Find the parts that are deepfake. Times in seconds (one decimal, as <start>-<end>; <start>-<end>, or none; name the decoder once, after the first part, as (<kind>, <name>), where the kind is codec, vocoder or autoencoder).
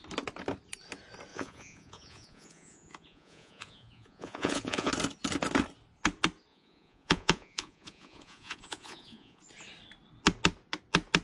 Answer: 1.3-4.9 (vocoder, Vocos); 6.5-9.4